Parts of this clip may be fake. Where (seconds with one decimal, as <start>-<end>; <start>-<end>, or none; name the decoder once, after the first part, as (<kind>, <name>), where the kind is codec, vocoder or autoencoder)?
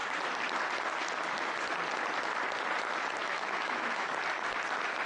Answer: 3.2-4.1 (autoencoder, DAC-VAE)